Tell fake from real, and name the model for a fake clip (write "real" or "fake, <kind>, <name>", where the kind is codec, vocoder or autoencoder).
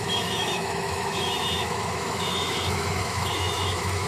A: fake, autoencoder, DAC-VAE